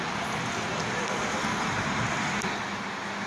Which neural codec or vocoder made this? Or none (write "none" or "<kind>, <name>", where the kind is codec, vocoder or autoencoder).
none